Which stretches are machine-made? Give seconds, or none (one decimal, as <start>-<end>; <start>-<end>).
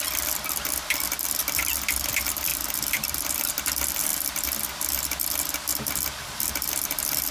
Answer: none